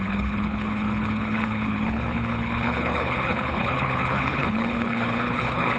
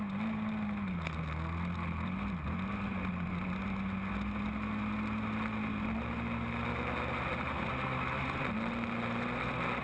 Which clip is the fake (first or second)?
first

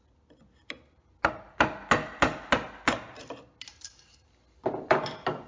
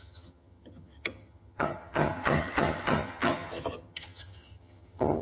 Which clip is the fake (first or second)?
second